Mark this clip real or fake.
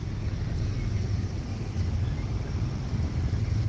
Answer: fake